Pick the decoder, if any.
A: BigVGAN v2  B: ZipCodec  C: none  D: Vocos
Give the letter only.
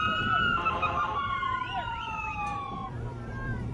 A